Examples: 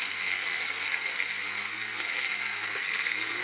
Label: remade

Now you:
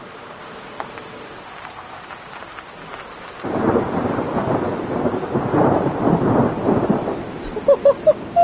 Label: remade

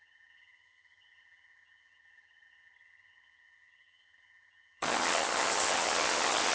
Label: remade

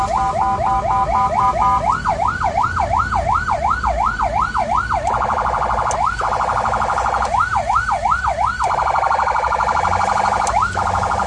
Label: recorded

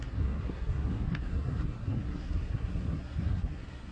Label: remade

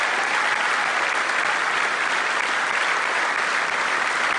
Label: recorded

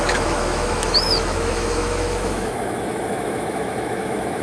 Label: remade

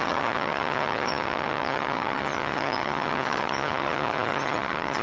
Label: remade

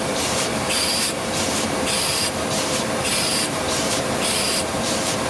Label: remade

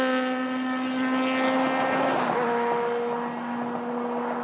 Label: recorded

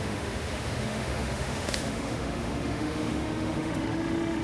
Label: remade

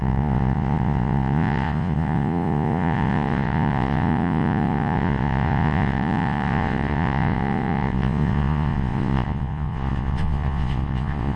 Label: remade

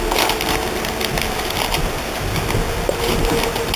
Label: recorded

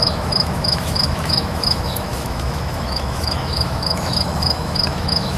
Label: remade